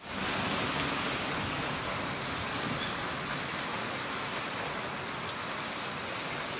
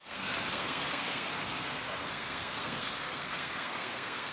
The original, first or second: first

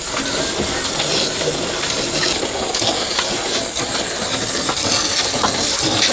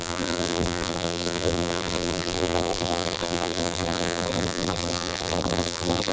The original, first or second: first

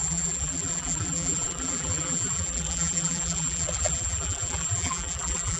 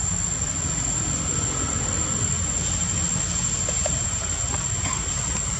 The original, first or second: second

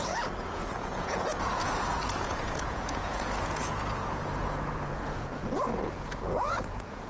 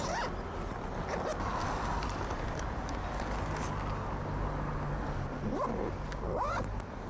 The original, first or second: second